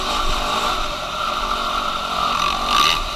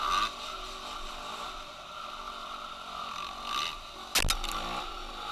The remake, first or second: first